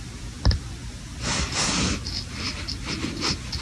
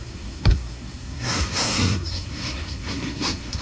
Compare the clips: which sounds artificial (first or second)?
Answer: second